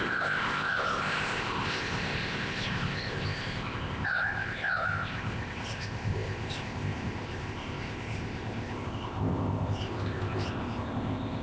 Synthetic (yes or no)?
yes